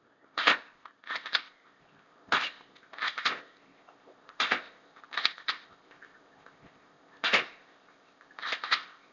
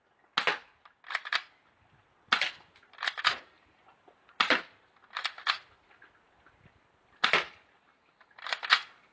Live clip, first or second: second